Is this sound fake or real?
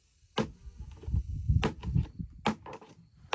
real